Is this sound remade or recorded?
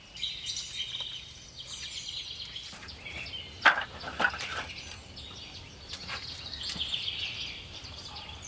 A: recorded